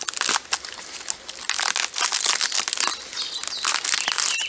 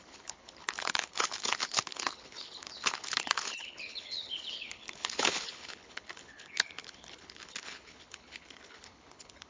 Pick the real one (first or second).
first